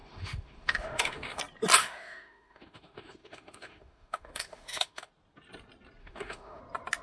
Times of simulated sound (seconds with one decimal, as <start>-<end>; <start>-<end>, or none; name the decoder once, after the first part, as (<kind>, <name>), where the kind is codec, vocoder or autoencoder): 0.0-1.4 (autoencoder, DAC-VAE); 1.8-5.1; 6.0-6.6

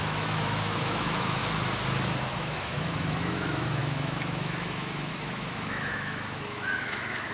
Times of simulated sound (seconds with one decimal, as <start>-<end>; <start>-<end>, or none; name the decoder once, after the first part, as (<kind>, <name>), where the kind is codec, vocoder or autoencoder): 0.0-1.4 (autoencoder, DAC-VAE); 2.3-7.3

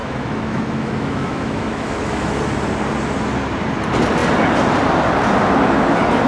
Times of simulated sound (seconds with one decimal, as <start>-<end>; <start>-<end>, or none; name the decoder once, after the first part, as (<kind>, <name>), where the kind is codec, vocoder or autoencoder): 0.0-2.4 (autoencoder, DAC-VAE)

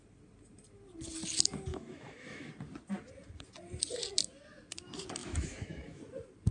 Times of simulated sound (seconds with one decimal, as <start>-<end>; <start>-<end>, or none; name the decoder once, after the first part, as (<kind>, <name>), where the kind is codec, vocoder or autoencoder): 1.7-2.5 (autoencoder, DAC-VAE); 5.2-6.0

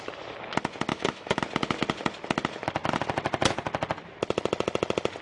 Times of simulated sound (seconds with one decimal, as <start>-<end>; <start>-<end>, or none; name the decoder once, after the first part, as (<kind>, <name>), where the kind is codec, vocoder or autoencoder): 0.9-1.4 (autoencoder, DAC-VAE)

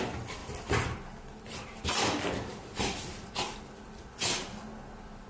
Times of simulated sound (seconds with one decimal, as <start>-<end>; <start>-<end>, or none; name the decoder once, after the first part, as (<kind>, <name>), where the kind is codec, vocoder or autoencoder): none